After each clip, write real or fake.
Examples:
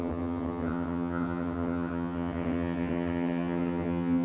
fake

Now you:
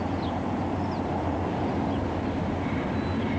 real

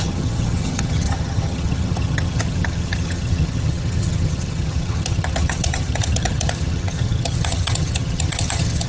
fake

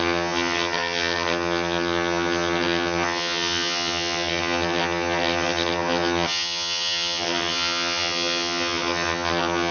fake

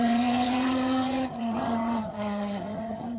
fake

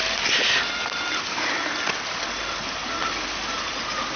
real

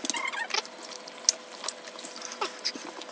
real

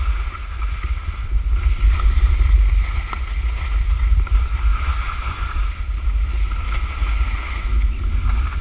real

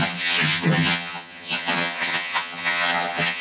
fake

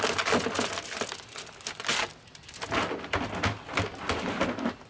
real